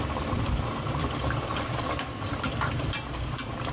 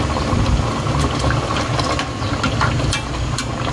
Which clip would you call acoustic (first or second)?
second